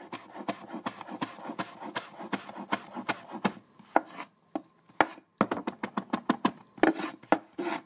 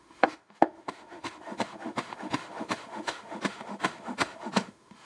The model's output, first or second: second